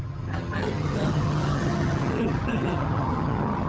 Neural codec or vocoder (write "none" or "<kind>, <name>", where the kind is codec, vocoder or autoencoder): vocoder, HiFi-GAN